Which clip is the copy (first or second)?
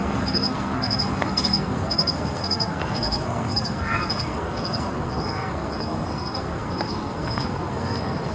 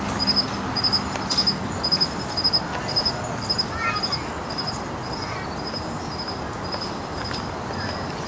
first